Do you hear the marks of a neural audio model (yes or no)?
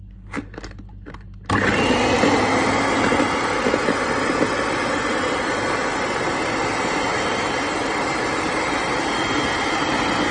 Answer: no